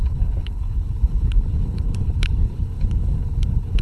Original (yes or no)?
no